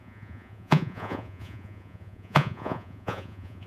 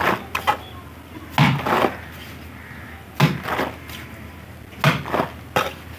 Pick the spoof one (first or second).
first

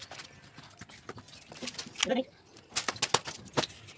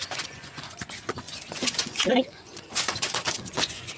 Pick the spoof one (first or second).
second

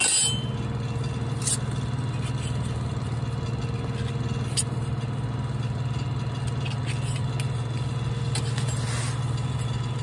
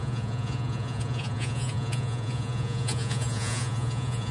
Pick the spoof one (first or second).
second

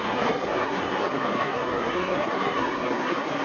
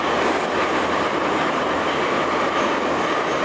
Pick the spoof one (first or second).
first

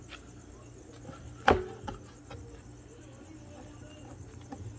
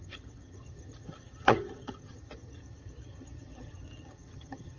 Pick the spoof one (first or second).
second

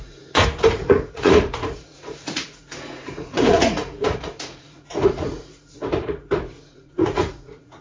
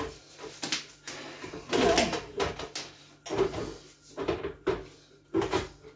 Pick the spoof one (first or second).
first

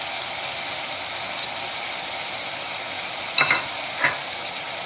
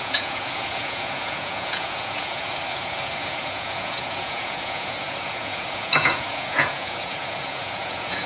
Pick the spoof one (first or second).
second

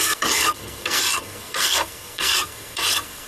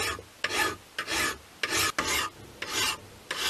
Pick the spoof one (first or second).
first